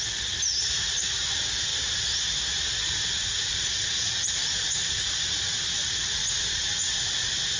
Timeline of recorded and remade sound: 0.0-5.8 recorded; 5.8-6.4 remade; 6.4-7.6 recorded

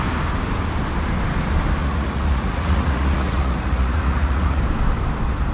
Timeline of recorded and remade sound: 0.0-1.8 recorded; 1.8-4.6 remade; 4.6-5.5 recorded

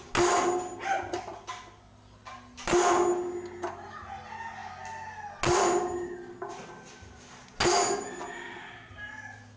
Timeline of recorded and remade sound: 0.0-9.6 recorded

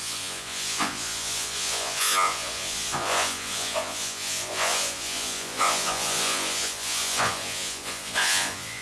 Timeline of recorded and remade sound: 0.0-8.8 remade